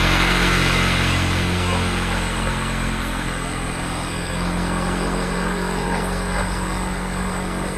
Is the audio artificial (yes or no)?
yes